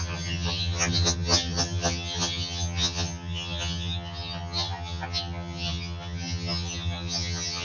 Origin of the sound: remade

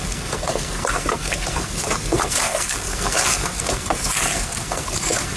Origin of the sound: remade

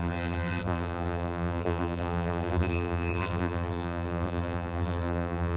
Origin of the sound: remade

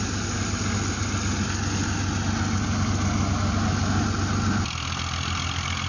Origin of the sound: recorded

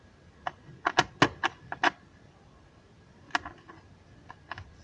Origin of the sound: recorded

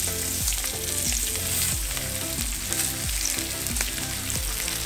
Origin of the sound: recorded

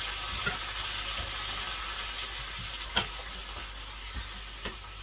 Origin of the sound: recorded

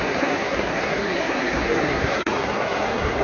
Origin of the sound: remade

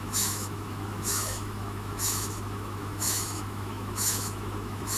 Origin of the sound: remade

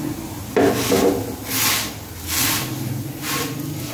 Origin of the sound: recorded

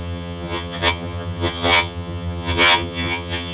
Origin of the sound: remade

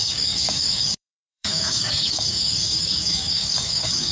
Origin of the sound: remade